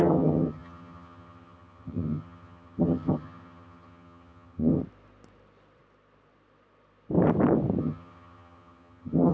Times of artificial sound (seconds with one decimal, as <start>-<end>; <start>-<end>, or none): 0.0-4.8; 7.8-9.3